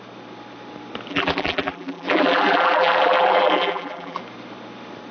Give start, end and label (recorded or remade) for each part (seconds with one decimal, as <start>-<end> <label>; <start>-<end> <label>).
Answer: 0.0-1.1 recorded; 1.1-4.2 remade; 4.2-5.1 recorded